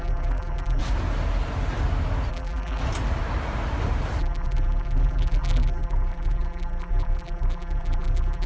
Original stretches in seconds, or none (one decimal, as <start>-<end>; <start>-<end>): 0.8-2.3; 2.8-4.2

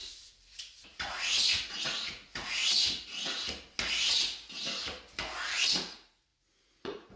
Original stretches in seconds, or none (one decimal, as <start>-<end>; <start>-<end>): 2.6-5.7

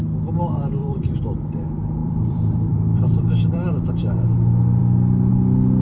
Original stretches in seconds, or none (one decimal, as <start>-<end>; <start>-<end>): 0.0-0.8; 1.4-2.0; 3.9-5.8

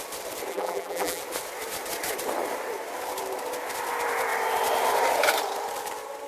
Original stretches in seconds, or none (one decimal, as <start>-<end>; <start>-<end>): 0.0-0.5; 1.2-6.3

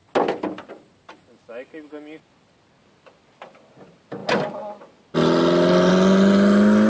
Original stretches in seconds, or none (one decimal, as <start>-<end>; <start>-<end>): 0.0-6.9

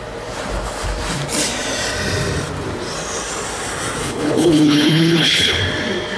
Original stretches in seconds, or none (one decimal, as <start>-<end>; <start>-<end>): 0.0-4.0; 5.6-6.2